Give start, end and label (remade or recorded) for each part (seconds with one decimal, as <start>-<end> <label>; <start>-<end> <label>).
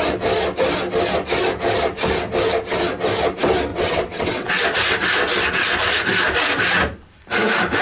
0.0-3.7 recorded; 3.7-4.5 remade; 4.5-7.8 recorded